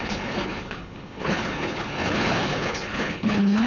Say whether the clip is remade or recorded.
remade